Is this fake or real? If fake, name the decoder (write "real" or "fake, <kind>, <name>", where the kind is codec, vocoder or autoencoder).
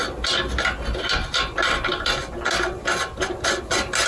real